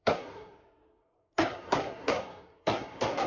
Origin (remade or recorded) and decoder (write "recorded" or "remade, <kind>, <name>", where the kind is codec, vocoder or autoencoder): remade, codec, SNAC